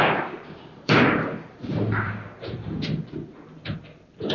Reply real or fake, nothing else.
fake